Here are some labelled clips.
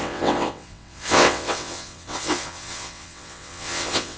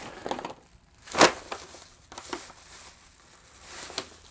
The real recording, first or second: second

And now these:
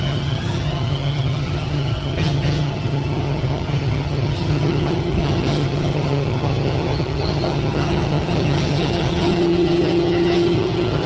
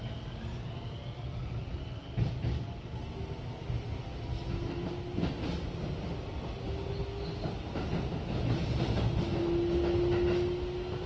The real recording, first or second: second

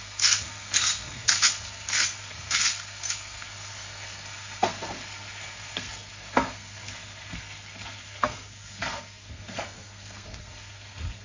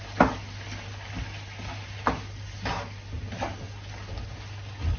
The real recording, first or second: second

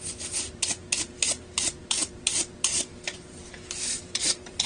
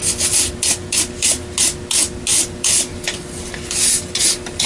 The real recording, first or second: second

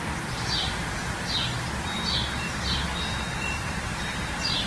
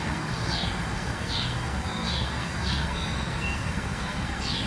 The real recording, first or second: first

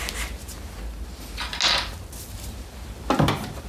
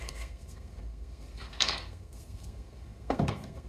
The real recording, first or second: first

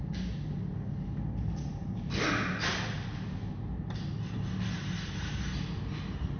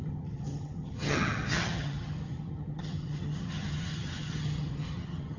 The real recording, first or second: first